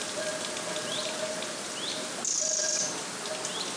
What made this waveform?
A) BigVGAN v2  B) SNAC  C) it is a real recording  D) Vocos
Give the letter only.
C